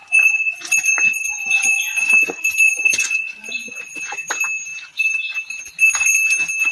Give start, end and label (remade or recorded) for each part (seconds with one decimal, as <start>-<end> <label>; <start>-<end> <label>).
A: 0.0-4.0 remade; 4.0-6.7 recorded